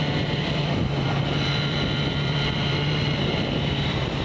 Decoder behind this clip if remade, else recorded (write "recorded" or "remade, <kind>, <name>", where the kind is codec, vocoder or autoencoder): remade, vocoder, BigVGAN v2